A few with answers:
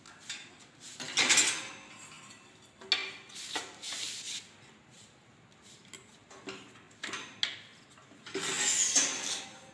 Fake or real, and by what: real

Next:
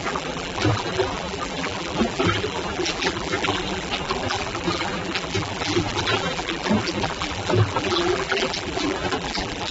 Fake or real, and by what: fake, vocoder, BigVGAN v2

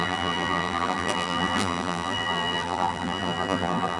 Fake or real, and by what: fake, vocoder, BigVGAN v2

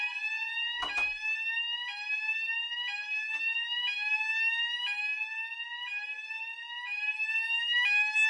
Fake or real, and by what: real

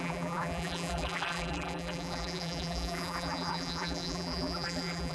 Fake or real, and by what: fake, vocoder, BigVGAN v2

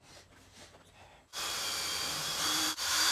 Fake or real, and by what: fake, vocoder, BigVGAN v2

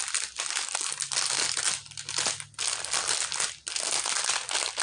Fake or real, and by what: real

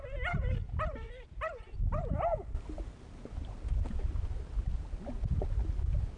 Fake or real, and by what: real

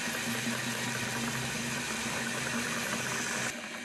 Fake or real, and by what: real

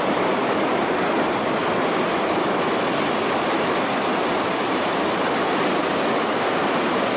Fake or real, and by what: fake, vocoder, BigVGAN v2